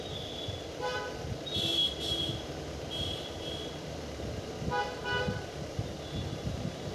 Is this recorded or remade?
recorded